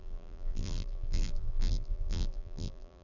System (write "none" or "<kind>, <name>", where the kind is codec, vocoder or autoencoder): vocoder, BigVGAN v2